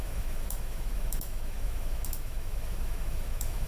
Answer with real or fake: fake